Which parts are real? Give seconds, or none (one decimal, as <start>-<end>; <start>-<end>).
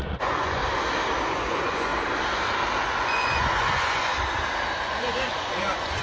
0.6-1.3; 1.9-2.8; 4.1-4.8